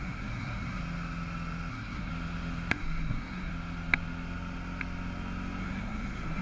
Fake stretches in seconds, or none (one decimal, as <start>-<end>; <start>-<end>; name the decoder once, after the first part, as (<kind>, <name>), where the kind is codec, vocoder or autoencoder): 0.0-0.8 (codec, SNAC); 1.7-2.1; 2.7-3.5; 5.6-6.4